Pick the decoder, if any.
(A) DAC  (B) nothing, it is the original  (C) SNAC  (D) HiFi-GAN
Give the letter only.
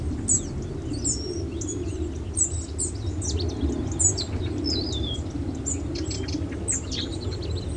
B